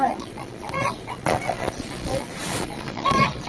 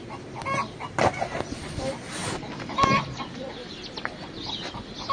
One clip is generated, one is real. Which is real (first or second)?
second